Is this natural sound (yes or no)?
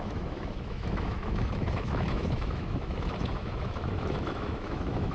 no